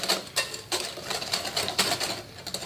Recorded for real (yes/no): yes